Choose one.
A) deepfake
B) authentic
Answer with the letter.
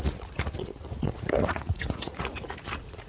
A